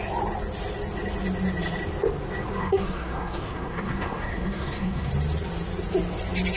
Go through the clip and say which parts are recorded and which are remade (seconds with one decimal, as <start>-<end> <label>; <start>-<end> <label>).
0.0-2.6 recorded; 2.6-5.1 remade; 5.1-6.6 recorded